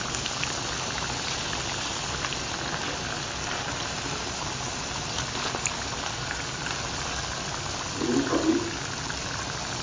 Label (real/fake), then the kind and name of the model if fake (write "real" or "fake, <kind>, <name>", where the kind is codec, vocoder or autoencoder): real